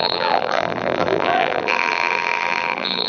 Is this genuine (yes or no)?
no